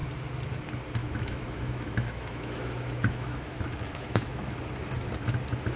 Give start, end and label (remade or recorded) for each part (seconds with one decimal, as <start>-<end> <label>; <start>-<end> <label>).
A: 0.0-1.0 recorded; 1.0-4.5 remade; 4.5-5.8 recorded